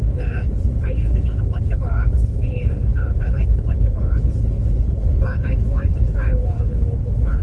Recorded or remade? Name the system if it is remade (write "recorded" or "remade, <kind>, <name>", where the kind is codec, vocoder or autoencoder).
remade, codec, HILCodec